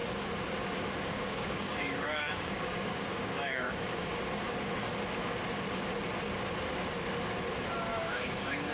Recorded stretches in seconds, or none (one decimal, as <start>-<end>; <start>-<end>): 0.0-1.1; 4.1-7.9